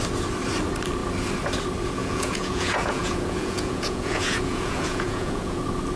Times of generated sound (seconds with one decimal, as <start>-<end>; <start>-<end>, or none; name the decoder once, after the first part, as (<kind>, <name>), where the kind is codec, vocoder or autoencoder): 2.0-5.6 (vocoder, Vocos)